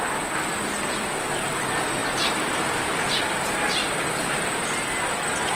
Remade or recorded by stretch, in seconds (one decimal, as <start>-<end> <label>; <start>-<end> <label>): 0.0-0.5 recorded; 0.5-1.1 remade; 1.1-3.8 recorded; 3.8-5.6 remade